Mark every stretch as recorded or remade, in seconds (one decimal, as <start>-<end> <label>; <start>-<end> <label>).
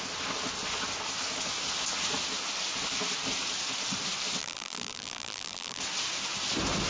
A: 0.0-4.4 recorded; 4.4-5.8 remade; 5.8-6.9 recorded